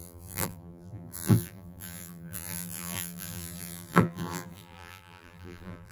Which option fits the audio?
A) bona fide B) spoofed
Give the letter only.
B